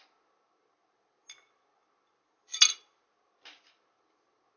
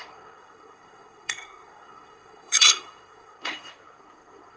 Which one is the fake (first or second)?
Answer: second